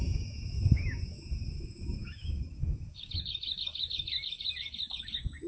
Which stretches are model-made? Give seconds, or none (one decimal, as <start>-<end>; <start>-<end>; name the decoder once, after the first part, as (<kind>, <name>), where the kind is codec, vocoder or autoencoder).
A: 0.0-5.5 (autoencoder, DAC-VAE)